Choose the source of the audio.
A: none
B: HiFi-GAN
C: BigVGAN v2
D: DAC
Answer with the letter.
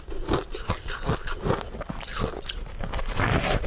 A